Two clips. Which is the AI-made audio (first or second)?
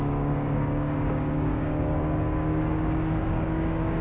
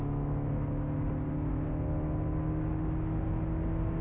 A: first